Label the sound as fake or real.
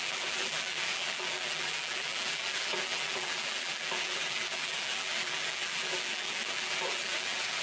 fake